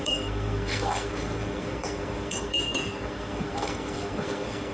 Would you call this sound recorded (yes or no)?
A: no